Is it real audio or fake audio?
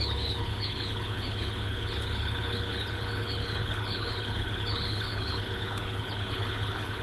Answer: fake